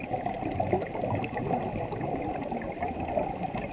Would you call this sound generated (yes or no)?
yes